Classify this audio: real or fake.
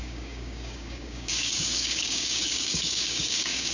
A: fake